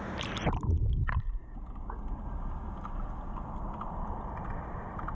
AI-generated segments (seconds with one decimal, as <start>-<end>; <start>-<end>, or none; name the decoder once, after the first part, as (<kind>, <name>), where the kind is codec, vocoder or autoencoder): 0.0-1.4 (vocoder, BigVGAN v2); 4.5-5.1